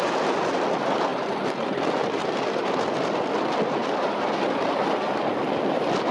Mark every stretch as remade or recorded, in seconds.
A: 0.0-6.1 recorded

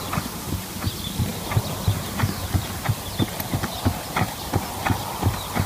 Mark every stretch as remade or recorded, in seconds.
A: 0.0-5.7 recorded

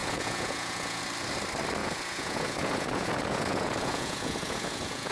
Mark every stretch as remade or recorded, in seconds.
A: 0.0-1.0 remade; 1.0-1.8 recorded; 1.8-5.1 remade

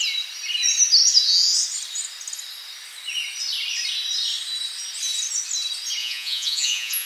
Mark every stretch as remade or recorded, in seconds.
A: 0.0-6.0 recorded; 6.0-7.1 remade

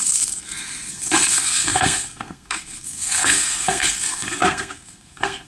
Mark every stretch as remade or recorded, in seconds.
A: 0.0-5.5 remade

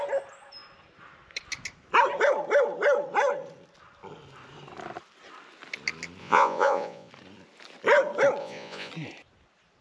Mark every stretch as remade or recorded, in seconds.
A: 0.0-6.2 recorded; 6.2-7.1 remade; 7.1-8.4 recorded; 8.4-8.9 remade; 8.9-9.8 recorded

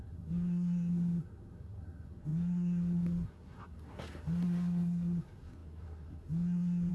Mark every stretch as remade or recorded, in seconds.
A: 0.0-6.9 remade

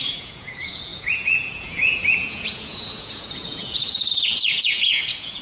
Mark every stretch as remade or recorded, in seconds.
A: 0.0-5.4 remade